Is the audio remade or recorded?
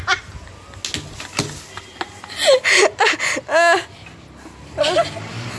recorded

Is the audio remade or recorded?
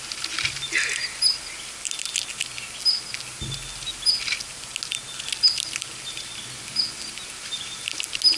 recorded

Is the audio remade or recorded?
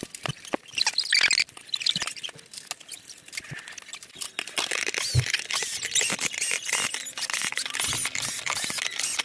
recorded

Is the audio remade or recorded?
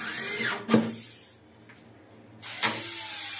recorded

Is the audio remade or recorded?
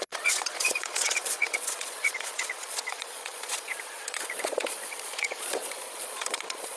remade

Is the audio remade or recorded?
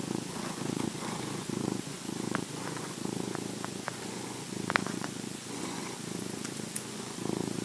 remade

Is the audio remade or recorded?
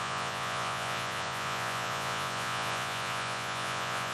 remade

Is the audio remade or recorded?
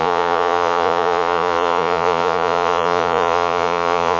remade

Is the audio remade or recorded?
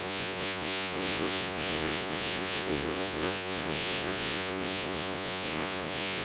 remade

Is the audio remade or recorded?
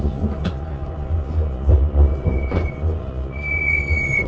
remade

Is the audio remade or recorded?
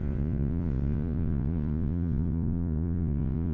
remade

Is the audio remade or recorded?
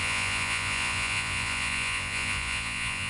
remade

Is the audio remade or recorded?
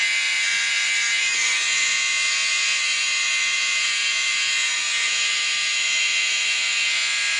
remade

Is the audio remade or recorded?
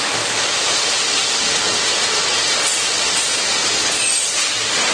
recorded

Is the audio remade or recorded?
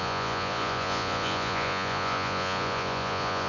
remade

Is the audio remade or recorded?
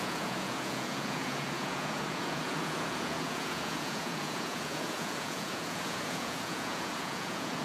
remade